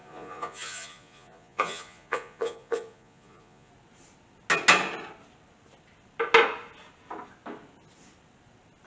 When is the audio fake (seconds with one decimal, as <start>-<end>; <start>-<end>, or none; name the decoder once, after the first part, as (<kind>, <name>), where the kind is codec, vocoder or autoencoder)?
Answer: 0.0-3.7 (vocoder, Vocos)